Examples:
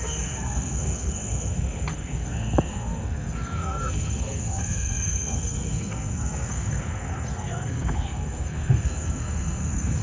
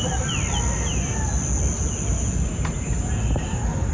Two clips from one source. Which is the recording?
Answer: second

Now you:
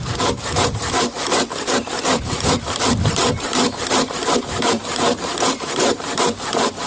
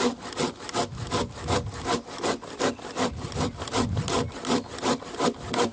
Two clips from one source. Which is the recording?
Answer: second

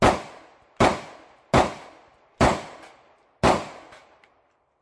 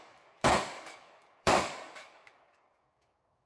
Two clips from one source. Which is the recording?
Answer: first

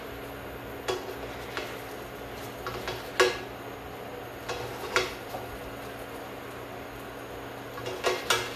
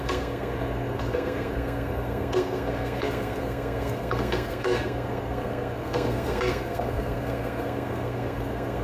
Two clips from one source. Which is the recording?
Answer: first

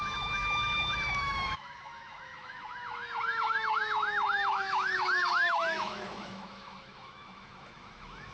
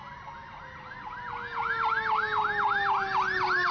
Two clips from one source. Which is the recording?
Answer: second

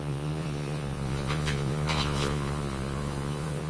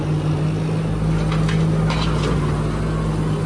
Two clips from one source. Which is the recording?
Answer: second